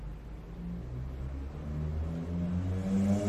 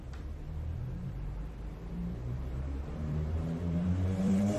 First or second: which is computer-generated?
second